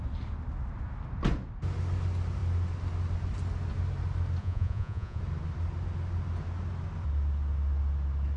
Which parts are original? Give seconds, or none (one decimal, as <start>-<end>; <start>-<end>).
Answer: 0.0-4.4; 5.2-8.4